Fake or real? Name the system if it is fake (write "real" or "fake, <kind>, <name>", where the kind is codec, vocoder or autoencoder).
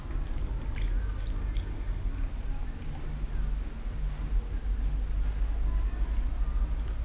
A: real